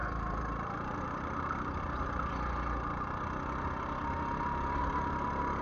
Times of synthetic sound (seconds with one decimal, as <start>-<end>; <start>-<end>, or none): 0.0-1.8